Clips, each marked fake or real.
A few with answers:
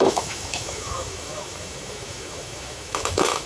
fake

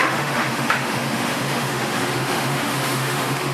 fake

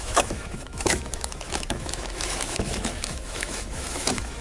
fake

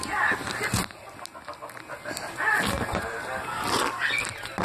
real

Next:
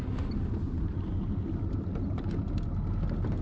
real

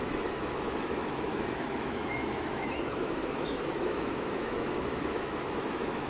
fake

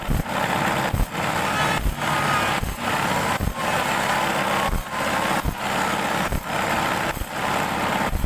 real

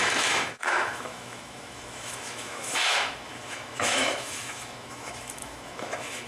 fake